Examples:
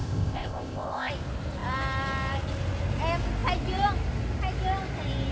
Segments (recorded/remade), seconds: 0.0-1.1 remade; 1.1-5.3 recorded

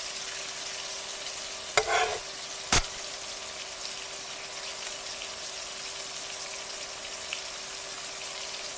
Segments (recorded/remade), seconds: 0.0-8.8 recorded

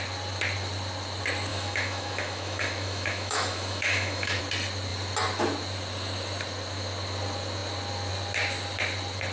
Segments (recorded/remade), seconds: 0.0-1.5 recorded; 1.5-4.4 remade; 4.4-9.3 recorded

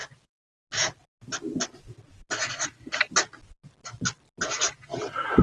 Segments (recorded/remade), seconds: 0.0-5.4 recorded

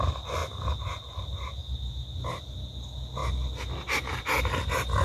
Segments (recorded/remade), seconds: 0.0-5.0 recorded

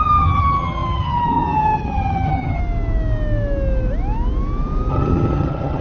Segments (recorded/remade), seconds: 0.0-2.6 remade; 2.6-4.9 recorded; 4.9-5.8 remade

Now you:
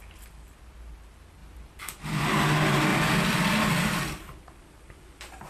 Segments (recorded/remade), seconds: 0.0-1.4 recorded; 1.4-2.2 remade; 2.2-2.9 recorded; 2.9-4.4 remade; 4.4-5.5 recorded

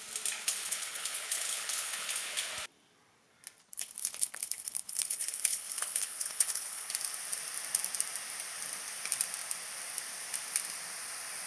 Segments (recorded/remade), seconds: 0.0-0.4 recorded; 0.4-2.5 remade; 2.5-3.6 recorded; 3.6-6.9 remade; 6.9-11.5 recorded